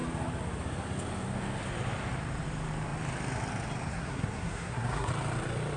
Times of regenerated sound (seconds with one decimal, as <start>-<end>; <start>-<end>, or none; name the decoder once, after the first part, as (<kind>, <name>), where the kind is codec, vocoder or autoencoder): 3.9-5.1 (codec, SNAC)